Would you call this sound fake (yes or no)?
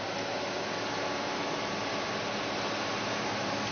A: no